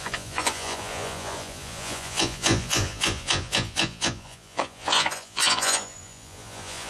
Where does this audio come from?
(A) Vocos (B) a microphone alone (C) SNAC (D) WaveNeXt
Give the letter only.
A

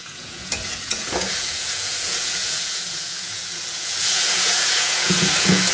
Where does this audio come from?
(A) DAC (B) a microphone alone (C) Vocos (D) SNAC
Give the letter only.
C